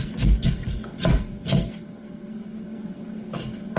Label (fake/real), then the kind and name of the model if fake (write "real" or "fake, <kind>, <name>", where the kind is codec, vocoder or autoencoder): fake, codec, SNAC